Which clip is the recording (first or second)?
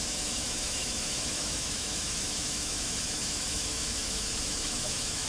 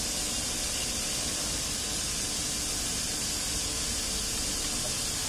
second